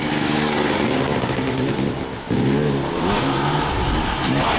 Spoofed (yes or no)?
no